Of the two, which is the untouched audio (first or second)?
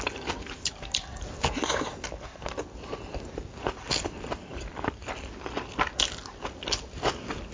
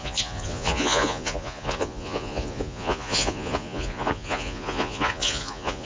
first